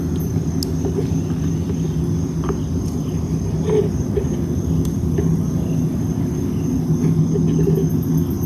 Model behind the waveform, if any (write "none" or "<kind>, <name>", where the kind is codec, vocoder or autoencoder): none